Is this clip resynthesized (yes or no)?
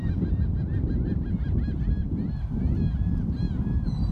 no